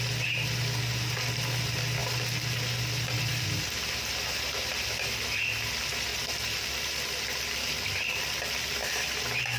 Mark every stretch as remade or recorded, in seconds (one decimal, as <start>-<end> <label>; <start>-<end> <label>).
0.0-6.1 recorded; 6.1-8.2 remade; 8.2-9.6 recorded